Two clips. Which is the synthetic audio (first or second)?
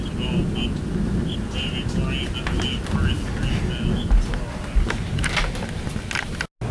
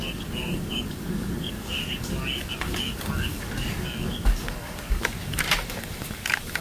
second